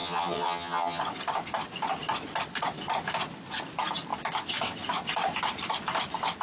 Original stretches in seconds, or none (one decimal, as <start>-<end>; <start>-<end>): 1.0-6.4